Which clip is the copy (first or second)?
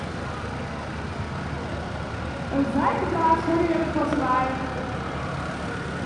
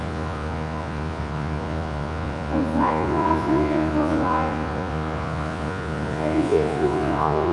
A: second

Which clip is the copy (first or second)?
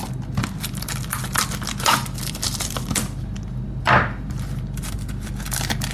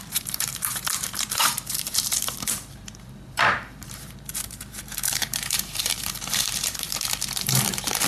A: second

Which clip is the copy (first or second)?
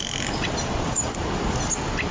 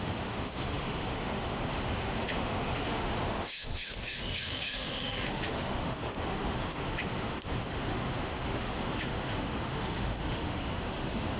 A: second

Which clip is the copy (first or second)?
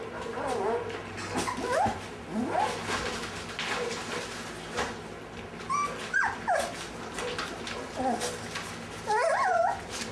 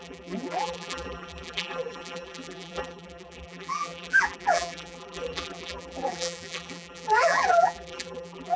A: second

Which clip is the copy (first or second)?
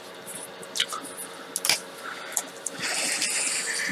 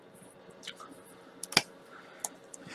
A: second